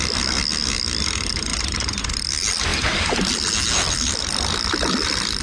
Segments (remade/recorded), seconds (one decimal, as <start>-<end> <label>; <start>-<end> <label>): 0.0-1.5 recorded; 1.5-2.0 remade; 2.0-5.4 recorded